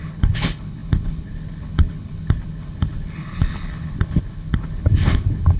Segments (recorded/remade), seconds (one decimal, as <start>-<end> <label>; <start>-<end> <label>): 0.0-5.6 remade